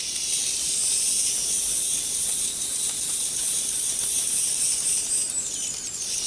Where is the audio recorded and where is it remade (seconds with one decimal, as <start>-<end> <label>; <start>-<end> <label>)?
0.0-6.3 recorded

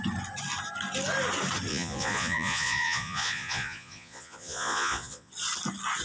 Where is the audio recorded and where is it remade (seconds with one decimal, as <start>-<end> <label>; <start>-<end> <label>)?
0.0-1.7 recorded; 1.7-5.3 remade; 5.3-6.0 recorded

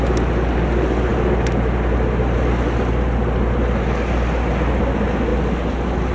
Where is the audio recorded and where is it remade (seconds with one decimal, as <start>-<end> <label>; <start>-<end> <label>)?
0.0-6.1 recorded